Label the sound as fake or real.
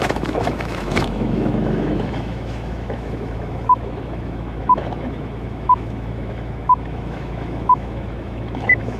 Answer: fake